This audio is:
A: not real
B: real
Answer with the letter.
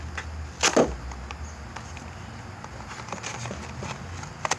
B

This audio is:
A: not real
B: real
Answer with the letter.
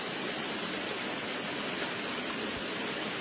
B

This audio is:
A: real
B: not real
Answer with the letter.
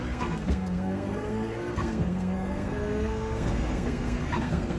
B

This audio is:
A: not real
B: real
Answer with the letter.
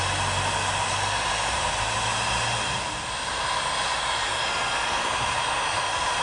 B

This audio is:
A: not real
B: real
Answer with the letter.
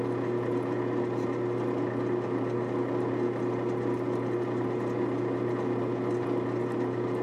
B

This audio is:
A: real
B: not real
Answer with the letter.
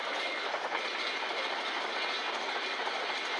A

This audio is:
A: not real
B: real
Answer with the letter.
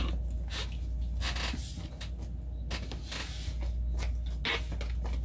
B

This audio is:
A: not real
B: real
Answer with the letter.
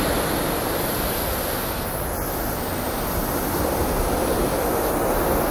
B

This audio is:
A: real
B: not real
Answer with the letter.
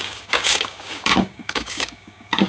B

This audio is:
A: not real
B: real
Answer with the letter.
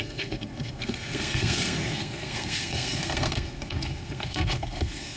A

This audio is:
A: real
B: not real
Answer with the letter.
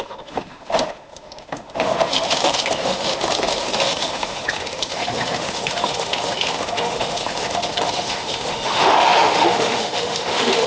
B